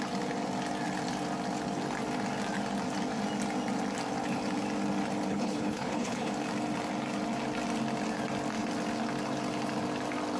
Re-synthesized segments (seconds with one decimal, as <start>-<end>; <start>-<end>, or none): 5.3-6.3